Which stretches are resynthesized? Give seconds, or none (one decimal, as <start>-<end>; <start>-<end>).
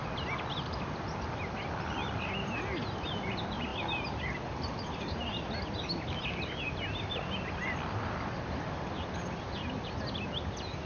none